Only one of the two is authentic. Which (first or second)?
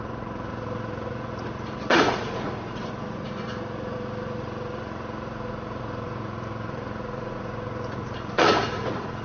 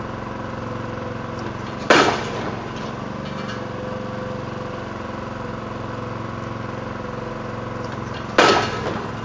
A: second